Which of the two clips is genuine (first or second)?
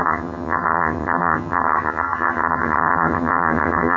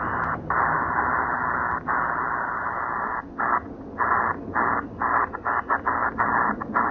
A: second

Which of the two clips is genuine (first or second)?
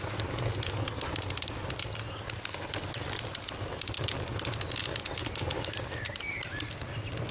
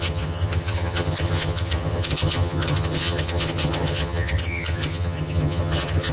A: first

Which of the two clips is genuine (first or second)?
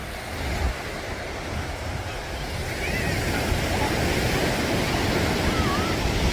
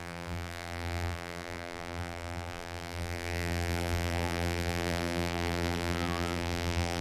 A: first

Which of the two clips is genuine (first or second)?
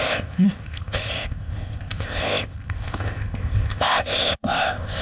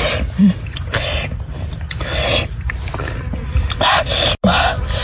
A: second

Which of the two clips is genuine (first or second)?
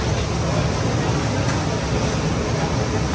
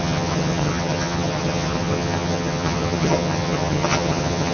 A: first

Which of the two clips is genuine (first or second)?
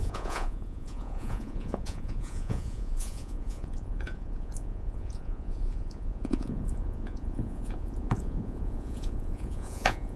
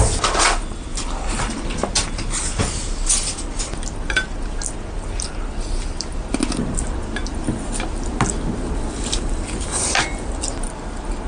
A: second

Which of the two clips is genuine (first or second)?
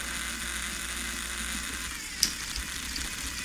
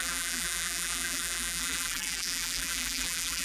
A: first